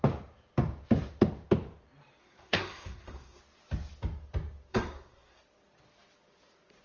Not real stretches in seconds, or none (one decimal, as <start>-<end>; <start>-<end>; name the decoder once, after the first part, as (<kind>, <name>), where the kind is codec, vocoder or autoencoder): 2.2-3.4 (codec, SNAC); 4.7-5.4